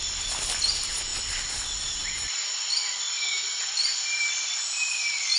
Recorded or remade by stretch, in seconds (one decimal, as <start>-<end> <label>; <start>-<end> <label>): 0.0-5.4 recorded